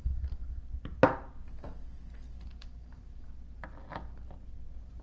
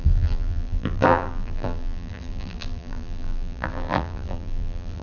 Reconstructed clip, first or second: second